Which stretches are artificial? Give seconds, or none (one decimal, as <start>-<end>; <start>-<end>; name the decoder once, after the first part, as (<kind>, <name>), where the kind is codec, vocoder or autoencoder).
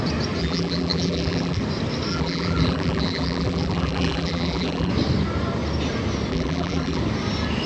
0.4-1.6 (vocoder, BigVGAN v2); 2.1-4.9; 6.3-7.0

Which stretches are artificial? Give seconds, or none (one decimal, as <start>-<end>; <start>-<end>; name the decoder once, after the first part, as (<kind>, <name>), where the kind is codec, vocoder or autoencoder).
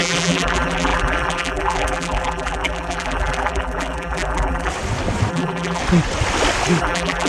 0.0-4.7 (vocoder, BigVGAN v2); 5.3-5.8; 6.8-7.3